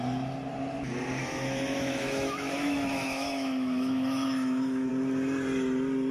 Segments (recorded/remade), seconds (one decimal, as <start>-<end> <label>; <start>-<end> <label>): 0.0-1.2 recorded; 1.2-4.9 remade; 4.9-6.1 recorded